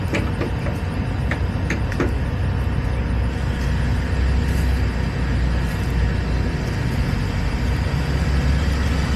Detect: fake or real real